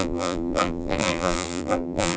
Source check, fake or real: fake